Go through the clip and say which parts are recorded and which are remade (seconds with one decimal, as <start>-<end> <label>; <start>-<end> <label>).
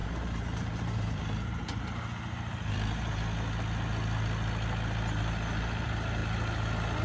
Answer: 0.0-3.2 remade; 3.2-7.0 recorded